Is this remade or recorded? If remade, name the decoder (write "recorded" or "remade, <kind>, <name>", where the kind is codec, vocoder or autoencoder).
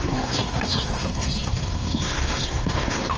remade, codec, SNAC